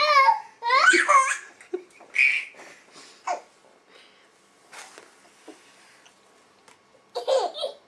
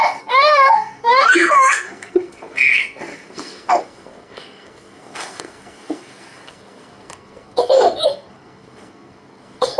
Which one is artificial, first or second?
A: second